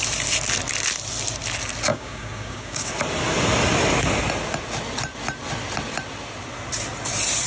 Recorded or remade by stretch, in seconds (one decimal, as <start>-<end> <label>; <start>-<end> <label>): 0.0-1.9 recorded; 1.9-2.9 remade; 2.9-7.5 recorded